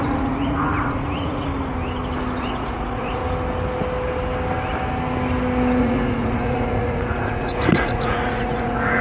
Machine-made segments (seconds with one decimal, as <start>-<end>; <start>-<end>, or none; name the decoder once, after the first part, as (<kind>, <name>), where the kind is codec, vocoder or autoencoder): 0.0-1.5 (vocoder, Vocos); 2.4-3.2; 5.8-9.0